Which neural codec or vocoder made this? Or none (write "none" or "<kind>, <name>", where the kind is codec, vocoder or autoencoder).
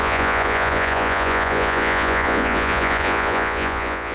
vocoder, Vocos